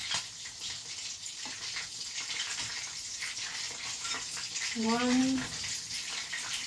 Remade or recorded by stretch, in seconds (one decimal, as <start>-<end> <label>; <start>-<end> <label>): 0.0-2.5 recorded; 2.5-5.2 remade; 5.2-6.7 recorded